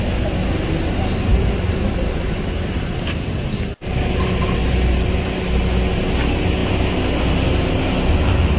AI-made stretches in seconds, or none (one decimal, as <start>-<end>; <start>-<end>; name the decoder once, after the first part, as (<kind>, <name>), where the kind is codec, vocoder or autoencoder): none

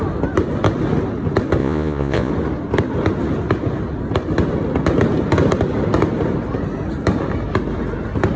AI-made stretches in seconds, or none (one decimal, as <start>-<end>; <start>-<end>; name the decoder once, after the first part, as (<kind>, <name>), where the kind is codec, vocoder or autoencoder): 1.6-2.3 (vocoder, Vocos)

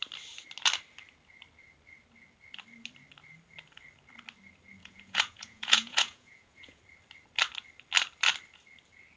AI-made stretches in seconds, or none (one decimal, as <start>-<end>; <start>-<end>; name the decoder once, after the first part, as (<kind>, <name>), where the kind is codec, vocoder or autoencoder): 4.8-6.8 (vocoder, Vocos)

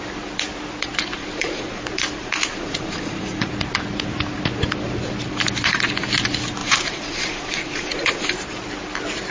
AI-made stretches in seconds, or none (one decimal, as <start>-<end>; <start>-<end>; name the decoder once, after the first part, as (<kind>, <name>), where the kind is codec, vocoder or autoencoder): 1.2-1.8 (vocoder, Vocos); 2.2-3.5; 6.6-8.3

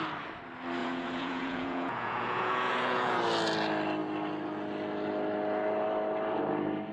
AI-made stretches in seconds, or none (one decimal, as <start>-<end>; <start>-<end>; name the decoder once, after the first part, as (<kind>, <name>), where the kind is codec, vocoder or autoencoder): 0.8-3.2 (vocoder, Vocos)

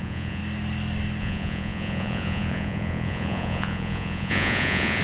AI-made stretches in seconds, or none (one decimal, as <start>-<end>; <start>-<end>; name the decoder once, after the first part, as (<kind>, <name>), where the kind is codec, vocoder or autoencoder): 0.0-0.4 (vocoder, Vocos); 1.2-5.0